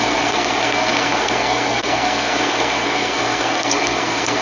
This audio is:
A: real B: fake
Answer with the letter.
B